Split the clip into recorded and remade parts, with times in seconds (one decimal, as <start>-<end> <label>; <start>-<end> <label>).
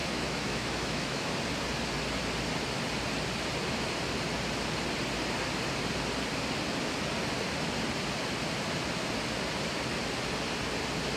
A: 0.0-1.3 remade; 1.3-11.2 recorded